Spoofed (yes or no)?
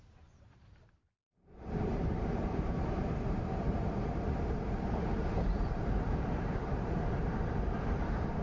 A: yes